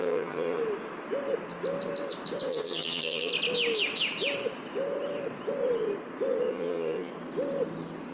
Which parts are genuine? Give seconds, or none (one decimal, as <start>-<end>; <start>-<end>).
0.6-2.5; 3.3-6.5; 7.1-8.1